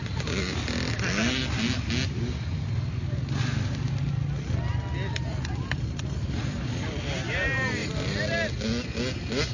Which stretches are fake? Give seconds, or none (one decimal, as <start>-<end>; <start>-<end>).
none

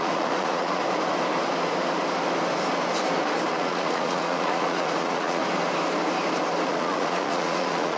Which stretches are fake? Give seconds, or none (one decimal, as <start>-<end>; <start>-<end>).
0.0-0.8; 3.5-5.4; 6.7-8.0

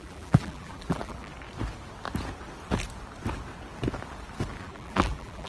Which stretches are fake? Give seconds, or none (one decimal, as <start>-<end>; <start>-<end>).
0.0-1.3; 4.6-5.5

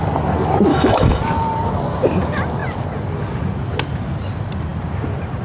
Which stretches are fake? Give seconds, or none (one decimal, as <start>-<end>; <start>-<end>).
0.7-1.2

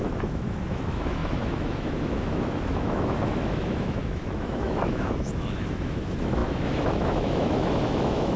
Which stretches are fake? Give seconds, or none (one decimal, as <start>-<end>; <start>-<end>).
0.0-8.4

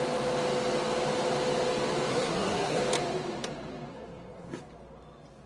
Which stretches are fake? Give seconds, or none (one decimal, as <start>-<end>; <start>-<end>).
2.1-2.8; 3.9-4.6

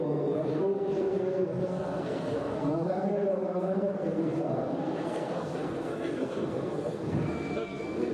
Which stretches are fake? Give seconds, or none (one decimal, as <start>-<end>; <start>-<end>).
0.0-8.1